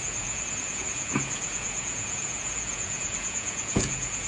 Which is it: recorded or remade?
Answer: remade